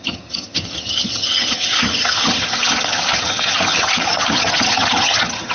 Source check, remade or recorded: remade